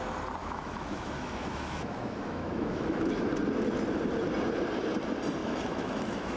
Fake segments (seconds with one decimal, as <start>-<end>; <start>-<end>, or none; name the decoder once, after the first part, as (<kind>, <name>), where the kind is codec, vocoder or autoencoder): 0.4-3.3 (autoencoder, DAC-VAE); 5.4-6.4